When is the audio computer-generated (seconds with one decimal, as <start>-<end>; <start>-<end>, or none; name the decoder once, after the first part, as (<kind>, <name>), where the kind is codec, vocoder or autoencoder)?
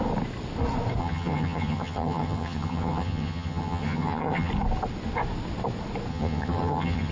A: 1.0-4.5 (vocoder, HiFi-GAN); 6.1-7.1